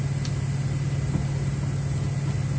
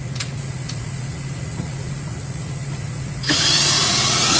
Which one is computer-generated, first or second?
second